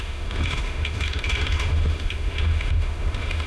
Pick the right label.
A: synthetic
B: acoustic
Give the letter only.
A